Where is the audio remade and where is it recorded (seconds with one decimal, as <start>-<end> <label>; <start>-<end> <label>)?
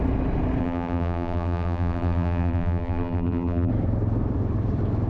0.0-0.6 recorded; 0.6-3.7 remade; 3.7-5.1 recorded